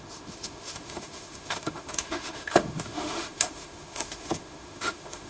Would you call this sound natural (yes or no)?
no